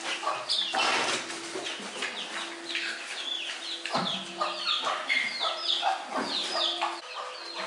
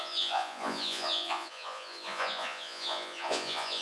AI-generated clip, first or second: second